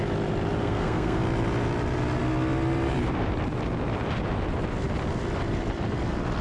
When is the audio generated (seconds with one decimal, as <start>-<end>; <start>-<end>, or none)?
0.6-1.2